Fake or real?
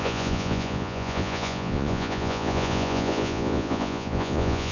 fake